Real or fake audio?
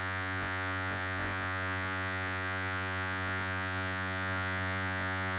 fake